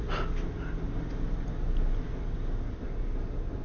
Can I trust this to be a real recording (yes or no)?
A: yes